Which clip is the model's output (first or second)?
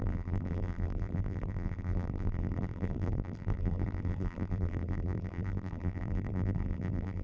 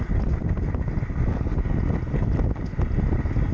first